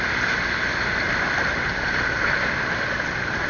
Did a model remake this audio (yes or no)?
no